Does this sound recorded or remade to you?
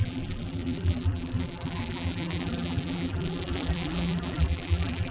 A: remade